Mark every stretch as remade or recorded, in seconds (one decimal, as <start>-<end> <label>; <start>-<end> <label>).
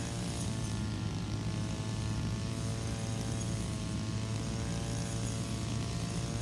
0.0-6.4 recorded